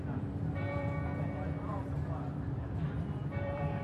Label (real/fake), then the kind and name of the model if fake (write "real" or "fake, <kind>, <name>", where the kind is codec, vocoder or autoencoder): fake, vocoder, BigVGAN v2